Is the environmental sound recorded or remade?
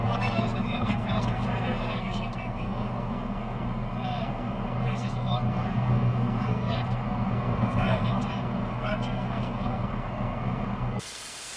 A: remade